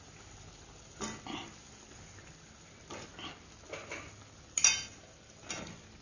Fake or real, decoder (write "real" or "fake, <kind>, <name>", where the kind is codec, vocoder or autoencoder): real